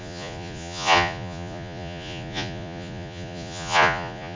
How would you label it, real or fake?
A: fake